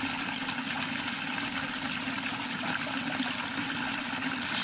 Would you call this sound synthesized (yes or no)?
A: no